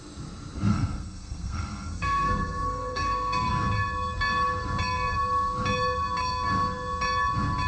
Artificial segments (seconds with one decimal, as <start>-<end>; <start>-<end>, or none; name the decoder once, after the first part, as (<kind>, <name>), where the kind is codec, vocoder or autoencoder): 0.7-3.5 (codec, SNAC)